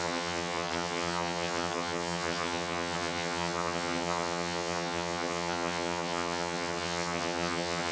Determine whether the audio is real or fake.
fake